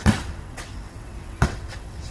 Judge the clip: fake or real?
fake